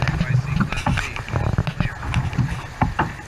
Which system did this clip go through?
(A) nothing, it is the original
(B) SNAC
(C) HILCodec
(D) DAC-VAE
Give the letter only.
A